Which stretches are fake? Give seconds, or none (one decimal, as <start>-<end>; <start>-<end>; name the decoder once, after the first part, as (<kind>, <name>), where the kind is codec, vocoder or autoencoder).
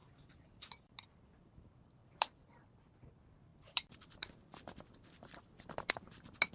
0.0-1.1 (vocoder, BigVGAN v2); 2.0-3.1; 3.5-5.9